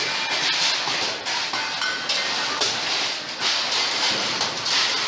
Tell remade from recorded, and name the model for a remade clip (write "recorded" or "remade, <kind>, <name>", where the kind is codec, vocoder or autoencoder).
recorded